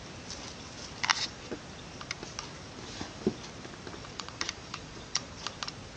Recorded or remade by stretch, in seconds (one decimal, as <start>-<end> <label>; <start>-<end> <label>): 0.0-1.1 recorded; 1.1-1.6 remade; 1.6-4.0 recorded; 4.0-5.4 remade; 5.4-6.0 recorded